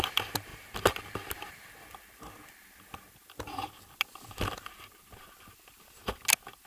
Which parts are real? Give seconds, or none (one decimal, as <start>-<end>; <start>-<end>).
0.0-6.7